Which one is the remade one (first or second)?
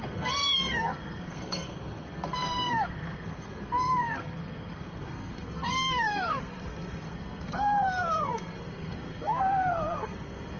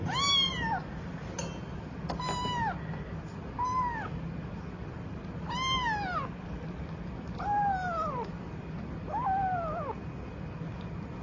first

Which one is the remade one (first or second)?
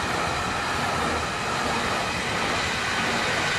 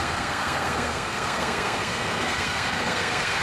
second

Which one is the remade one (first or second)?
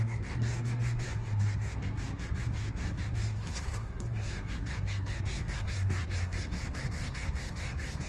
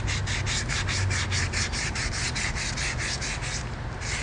first